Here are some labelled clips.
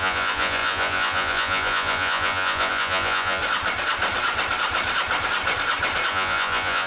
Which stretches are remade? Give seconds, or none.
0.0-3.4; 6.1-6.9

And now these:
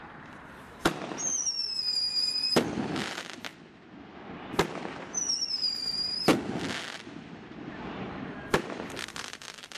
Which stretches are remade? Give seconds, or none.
0.0-3.5; 5.4-6.3; 7.0-9.8

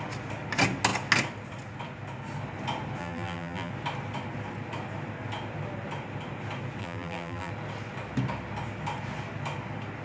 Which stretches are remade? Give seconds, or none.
3.0-3.7; 6.8-7.5